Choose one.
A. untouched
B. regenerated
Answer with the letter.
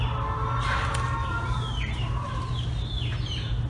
A